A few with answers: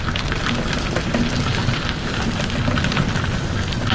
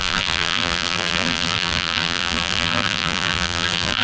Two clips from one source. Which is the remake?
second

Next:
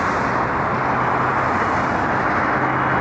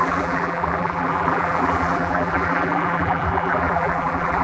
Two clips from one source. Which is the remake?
second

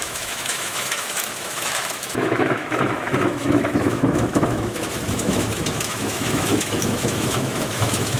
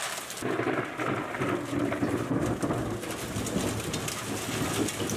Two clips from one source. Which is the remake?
first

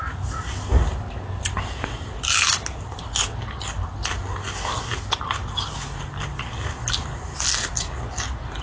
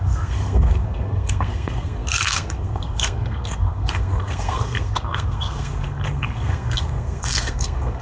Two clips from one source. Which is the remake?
second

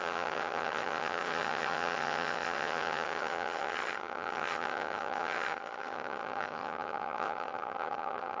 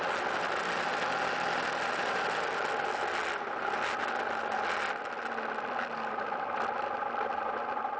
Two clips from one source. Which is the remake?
first